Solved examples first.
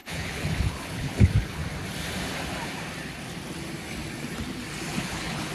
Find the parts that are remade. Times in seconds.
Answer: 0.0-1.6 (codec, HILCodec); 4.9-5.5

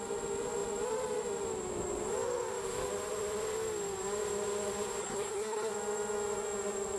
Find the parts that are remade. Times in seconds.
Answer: 5.0-5.7 (codec, SNAC)

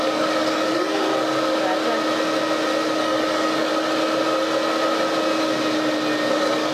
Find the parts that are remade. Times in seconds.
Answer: 0.0-1.1 (codec, DAC); 3.0-3.7; 6.3-6.7

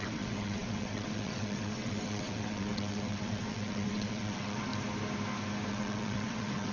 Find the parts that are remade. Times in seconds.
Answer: 0.0-4.7 (vocoder, WaveNeXt); 5.7-6.7